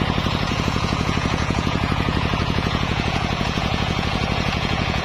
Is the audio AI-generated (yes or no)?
yes